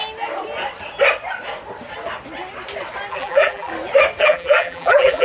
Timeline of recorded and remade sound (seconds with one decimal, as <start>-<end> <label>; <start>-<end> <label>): 0.0-3.1 recorded; 3.1-3.7 remade; 3.7-4.2 recorded; 4.2-5.2 remade